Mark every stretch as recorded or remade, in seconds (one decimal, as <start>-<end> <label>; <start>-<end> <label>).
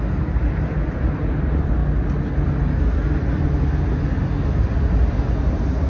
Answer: 0.0-5.9 recorded